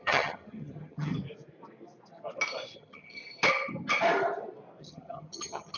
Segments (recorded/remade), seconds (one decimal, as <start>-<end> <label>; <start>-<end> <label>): 0.0-1.1 remade; 1.1-2.7 recorded; 2.7-3.2 remade; 3.2-4.8 recorded; 4.8-5.8 remade